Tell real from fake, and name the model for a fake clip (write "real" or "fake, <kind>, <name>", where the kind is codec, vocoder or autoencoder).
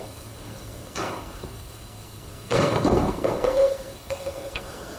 fake, codec, SNAC